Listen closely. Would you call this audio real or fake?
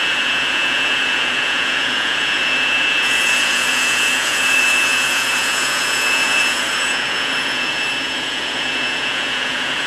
fake